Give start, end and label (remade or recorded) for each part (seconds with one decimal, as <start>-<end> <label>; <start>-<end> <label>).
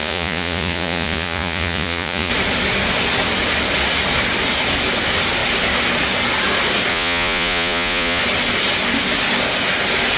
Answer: 0.0-2.3 remade; 2.3-6.9 recorded; 6.9-8.2 remade; 8.2-10.2 recorded